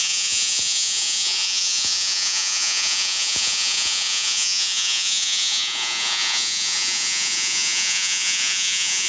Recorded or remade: remade